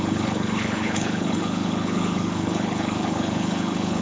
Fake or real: fake